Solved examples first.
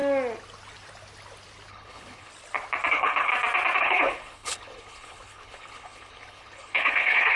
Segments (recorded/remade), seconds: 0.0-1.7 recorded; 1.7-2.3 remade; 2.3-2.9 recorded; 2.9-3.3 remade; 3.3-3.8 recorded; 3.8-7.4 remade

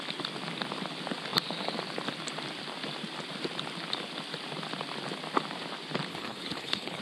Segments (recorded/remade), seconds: 0.0-6.1 recorded; 6.1-7.0 remade